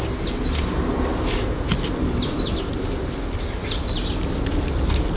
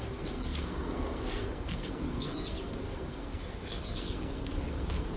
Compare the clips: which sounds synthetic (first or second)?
second